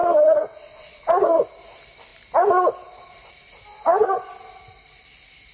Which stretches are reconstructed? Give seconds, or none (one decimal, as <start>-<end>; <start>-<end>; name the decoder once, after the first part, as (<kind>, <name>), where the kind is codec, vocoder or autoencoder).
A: 0.0-1.3 (vocoder, WaveNeXt); 3.7-4.3